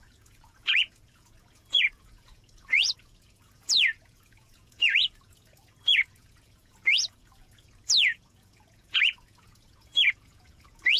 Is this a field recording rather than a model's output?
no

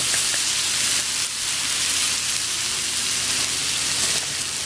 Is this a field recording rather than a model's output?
yes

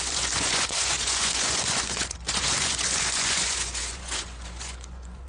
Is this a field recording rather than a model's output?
no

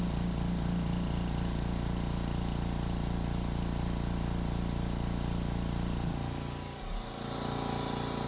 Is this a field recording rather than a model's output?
yes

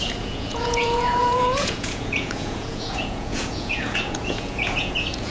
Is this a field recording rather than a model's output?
no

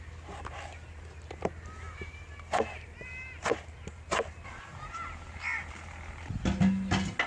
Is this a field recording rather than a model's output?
yes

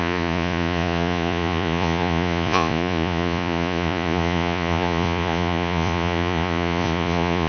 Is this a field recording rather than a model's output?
no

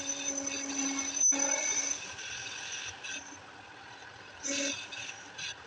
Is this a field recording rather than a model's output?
yes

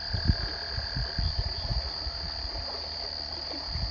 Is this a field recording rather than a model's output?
yes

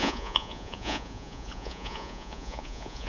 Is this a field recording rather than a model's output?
no